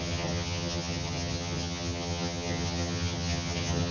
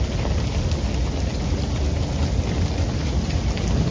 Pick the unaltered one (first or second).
second